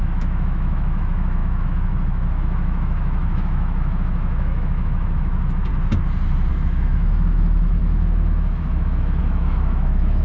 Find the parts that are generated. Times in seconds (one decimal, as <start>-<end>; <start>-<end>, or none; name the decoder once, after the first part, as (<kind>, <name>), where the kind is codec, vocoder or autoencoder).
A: 0.0-5.7 (autoencoder, DAC-VAE); 6.5-10.2